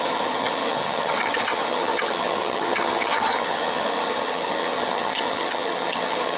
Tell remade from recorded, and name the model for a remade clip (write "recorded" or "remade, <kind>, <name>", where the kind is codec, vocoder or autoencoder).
remade, vocoder, HiFi-GAN